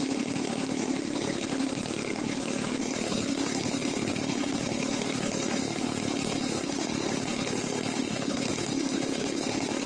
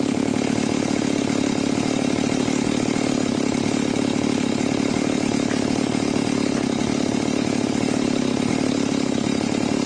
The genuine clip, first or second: second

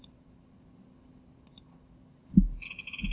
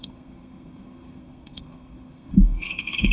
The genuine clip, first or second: first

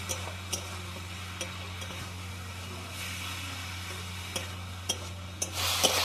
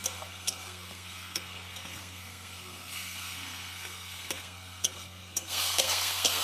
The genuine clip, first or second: first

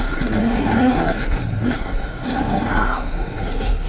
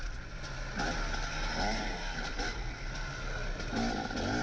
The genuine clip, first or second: second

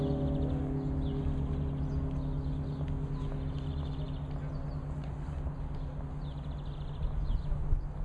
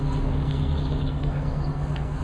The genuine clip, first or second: first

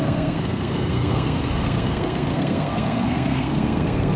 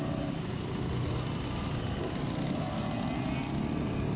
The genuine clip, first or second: second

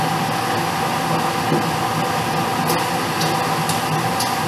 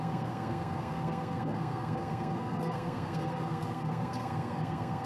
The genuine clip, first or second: first